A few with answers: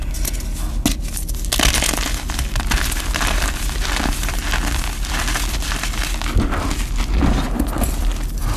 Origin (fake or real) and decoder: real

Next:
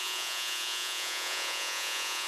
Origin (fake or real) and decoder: fake, vocoder, Vocos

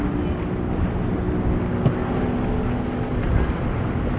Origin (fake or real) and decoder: real